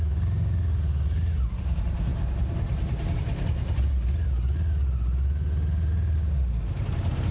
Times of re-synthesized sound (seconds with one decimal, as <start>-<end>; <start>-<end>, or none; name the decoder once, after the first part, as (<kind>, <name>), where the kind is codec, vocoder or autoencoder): none